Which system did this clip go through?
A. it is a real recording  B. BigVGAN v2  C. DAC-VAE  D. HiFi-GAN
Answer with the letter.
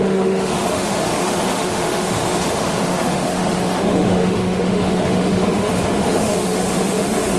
C